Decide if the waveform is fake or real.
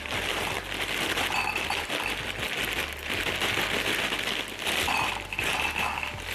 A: real